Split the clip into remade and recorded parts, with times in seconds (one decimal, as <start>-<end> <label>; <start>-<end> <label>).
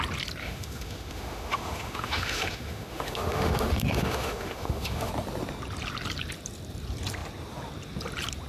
0.0-0.4 recorded; 0.4-5.1 remade; 5.1-8.5 recorded